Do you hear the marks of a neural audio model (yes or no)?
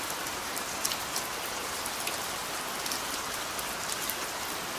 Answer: no